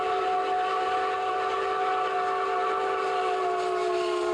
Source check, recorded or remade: recorded